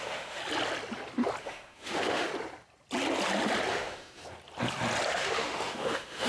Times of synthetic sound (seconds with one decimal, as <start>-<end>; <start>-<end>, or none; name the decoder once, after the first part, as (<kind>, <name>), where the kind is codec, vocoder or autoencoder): 0.0-0.4 (autoencoder, DAC-VAE); 1.4-2.3; 3.7-4.2; 5.1-6.3